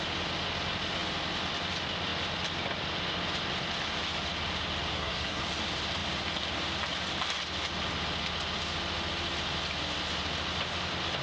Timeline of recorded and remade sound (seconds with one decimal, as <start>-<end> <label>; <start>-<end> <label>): 0.0-4.9 recorded; 4.9-5.4 remade; 5.4-11.2 recorded